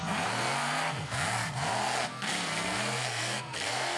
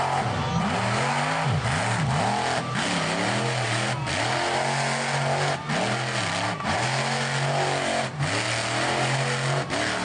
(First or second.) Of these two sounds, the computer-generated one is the first